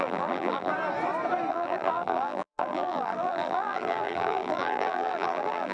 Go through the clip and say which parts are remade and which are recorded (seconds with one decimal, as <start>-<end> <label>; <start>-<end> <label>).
0.0-0.7 remade; 0.7-1.5 recorded; 1.5-5.7 remade